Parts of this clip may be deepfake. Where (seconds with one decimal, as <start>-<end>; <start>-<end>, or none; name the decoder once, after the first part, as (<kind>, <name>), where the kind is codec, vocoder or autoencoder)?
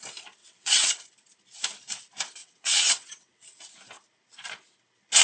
0.4-0.9 (vocoder, WaveNeXt); 2.4-3.6